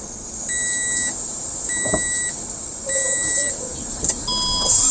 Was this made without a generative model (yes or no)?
yes